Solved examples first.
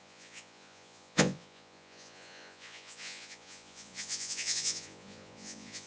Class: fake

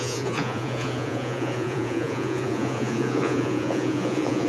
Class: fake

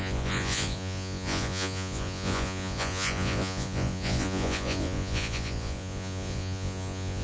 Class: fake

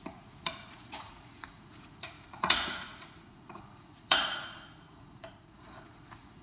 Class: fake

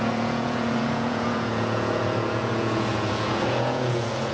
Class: fake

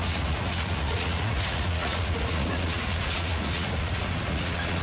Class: fake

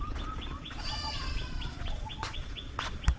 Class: fake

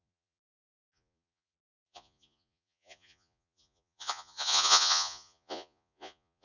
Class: fake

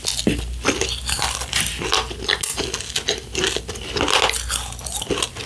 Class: real